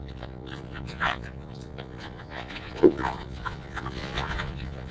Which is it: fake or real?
fake